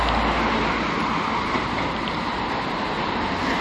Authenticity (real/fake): real